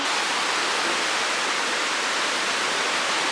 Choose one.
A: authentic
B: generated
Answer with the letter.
A